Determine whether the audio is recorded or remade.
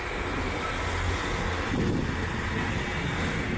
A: recorded